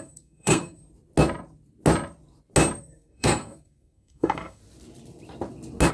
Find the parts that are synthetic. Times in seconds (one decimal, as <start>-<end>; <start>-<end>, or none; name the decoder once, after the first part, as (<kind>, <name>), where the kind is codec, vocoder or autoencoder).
0.0-0.8 (codec, SNAC); 2.8-4.6